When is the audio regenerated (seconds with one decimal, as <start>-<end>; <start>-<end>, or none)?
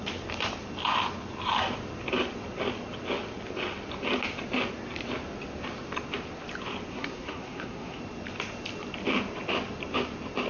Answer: 6.9-8.0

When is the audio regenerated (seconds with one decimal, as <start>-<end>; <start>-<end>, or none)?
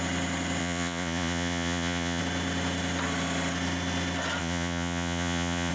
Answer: 0.6-2.2; 4.4-5.7